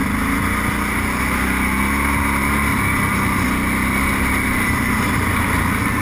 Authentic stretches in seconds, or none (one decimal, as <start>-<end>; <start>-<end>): 0.0-6.0